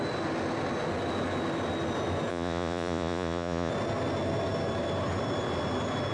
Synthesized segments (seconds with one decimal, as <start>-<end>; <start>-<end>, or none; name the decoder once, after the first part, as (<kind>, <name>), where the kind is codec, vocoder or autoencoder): 2.3-3.7 (vocoder, Vocos)